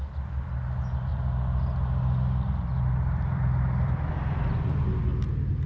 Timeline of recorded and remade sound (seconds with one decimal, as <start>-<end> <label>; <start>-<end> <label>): 0.0-1.1 recorded; 1.1-4.1 remade; 4.1-5.7 recorded